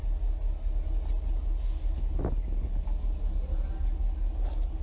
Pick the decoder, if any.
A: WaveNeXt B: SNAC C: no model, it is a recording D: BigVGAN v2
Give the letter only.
C